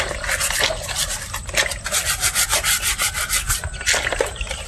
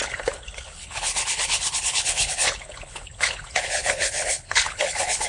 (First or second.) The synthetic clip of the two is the second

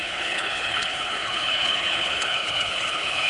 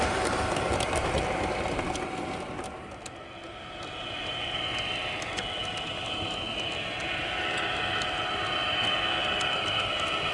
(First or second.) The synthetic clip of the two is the first